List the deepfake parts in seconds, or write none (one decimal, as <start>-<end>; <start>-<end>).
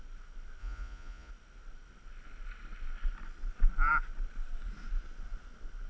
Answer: 0.6-1.3